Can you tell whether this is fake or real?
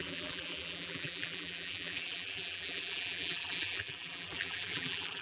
fake